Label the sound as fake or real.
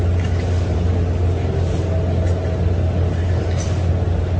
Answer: real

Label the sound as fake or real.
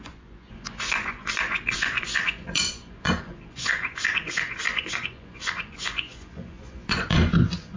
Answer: fake